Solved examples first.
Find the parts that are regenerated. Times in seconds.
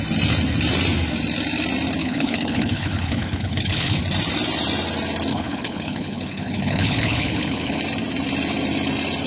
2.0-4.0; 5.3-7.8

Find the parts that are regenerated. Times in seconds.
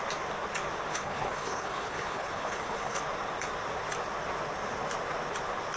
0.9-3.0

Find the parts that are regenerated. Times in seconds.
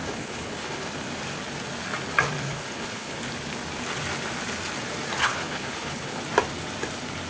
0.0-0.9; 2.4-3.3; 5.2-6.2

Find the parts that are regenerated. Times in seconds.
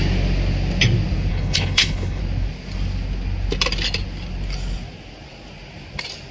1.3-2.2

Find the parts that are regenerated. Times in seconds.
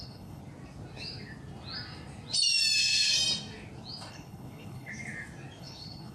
0.0-0.4; 4.1-4.9; 5.6-6.1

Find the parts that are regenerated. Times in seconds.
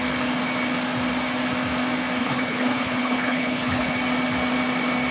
2.2-3.9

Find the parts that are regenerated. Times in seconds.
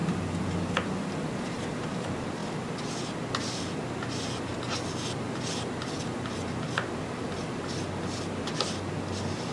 none